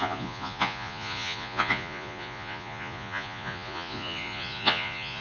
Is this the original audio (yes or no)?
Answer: no